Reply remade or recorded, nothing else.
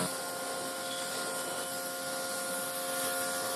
recorded